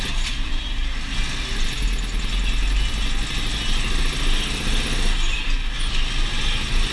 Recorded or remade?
recorded